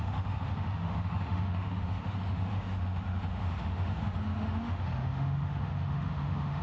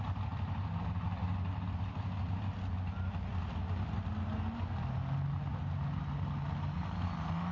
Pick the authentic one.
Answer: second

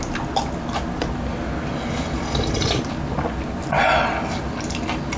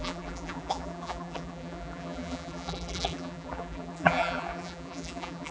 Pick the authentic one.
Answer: first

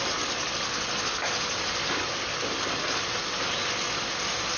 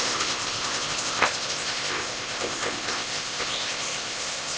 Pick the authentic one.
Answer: first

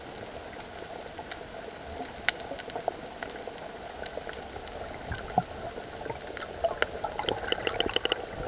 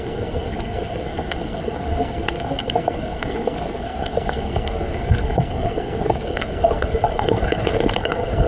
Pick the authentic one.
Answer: first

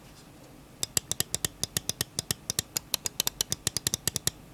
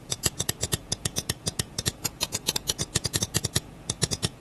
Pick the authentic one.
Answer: first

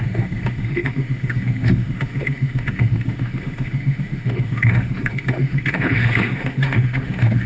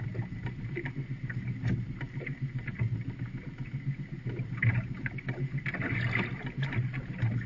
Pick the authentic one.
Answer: second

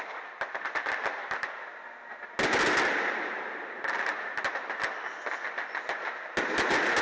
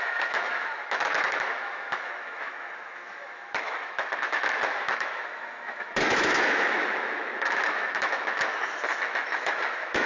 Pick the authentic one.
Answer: first